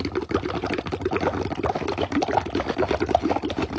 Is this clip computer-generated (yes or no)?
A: no